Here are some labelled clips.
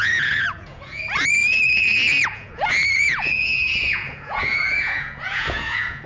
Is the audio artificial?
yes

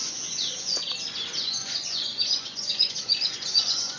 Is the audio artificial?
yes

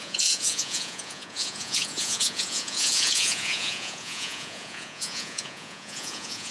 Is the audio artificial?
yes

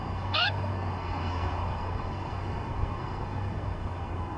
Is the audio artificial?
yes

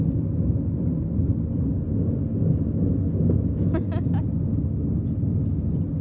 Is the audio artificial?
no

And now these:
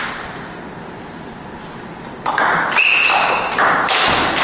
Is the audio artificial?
no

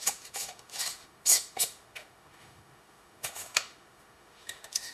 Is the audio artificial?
yes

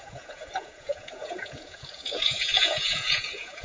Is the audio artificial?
yes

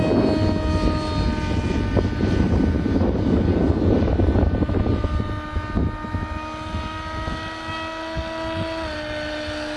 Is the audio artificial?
no